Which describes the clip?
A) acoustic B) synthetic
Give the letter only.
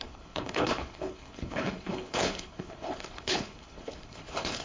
B